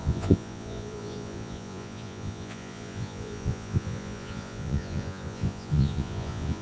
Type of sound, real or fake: fake